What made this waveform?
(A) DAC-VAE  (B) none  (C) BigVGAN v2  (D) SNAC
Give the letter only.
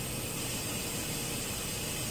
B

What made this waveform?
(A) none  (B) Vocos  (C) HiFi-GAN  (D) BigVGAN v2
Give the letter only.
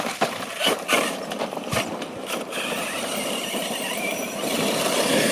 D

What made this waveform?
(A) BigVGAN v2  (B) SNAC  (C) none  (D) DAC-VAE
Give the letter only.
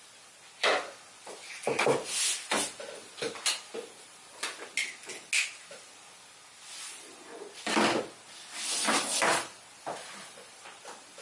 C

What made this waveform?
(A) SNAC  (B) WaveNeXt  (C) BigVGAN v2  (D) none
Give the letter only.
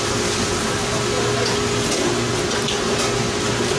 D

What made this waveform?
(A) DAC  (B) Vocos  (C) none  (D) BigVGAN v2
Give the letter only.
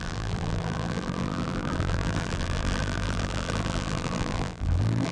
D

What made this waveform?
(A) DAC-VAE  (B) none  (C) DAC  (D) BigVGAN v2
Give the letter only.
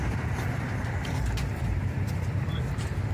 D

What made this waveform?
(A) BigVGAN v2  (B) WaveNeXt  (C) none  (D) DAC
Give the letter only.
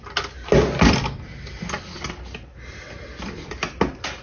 C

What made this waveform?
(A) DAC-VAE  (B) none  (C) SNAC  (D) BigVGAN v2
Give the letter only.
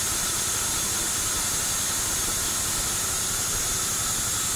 B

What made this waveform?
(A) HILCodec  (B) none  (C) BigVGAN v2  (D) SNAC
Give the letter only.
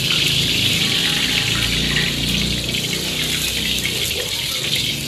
B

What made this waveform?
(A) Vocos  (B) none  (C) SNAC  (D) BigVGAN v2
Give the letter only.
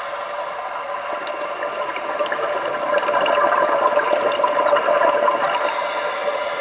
B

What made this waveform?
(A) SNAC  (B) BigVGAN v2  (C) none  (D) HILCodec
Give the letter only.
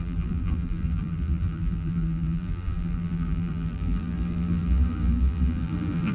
B